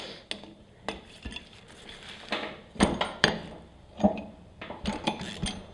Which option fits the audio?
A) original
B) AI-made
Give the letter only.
A